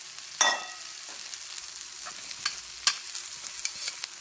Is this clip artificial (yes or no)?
no